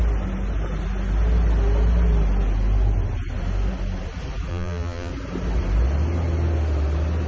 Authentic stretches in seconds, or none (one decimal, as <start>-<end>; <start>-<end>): 0.0-4.5; 5.1-7.3